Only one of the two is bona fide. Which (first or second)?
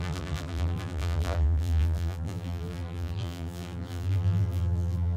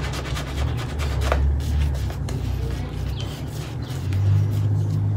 second